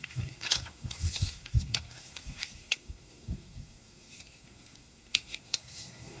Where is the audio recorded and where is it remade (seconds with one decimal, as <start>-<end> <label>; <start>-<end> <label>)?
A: 0.0-6.2 remade